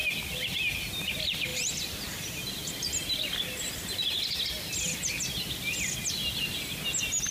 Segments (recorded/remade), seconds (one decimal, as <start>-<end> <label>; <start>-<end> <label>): 0.0-1.5 recorded; 1.5-2.7 remade; 2.7-7.3 recorded